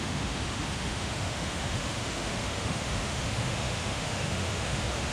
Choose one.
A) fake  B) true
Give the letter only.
A